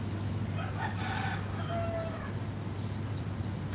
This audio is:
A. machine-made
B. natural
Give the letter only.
A